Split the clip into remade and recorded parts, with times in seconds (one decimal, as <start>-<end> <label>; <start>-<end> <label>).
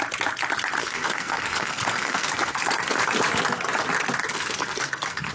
0.0-0.8 recorded; 0.8-3.0 remade; 3.0-4.2 recorded; 4.2-5.3 remade